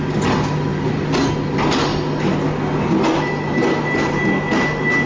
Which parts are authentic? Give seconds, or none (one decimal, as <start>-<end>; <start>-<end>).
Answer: 0.0-5.1